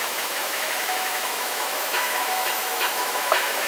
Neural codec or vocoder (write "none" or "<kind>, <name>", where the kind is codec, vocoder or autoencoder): autoencoder, DAC-VAE